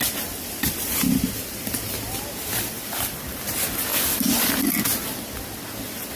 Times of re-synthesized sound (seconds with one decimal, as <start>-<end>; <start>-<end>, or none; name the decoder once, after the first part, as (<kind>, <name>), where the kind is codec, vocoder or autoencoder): 2.5-3.4 (vocoder, BigVGAN v2); 3.9-4.5